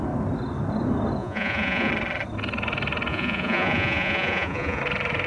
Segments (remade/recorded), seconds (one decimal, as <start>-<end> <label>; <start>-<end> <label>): 0.0-1.2 recorded; 1.2-1.9 remade; 1.9-3.1 recorded; 3.1-4.8 remade; 4.8-5.3 recorded